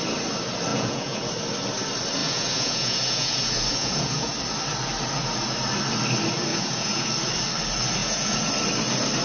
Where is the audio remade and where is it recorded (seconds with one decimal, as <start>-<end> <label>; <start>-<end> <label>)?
0.0-0.7 recorded; 0.7-1.2 remade; 1.2-2.2 recorded; 2.2-4.3 remade; 4.3-6.5 recorded; 6.5-7.1 remade; 7.1-8.0 recorded; 8.0-8.5 remade; 8.5-9.2 recorded